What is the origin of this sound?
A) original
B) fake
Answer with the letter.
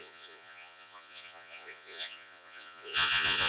B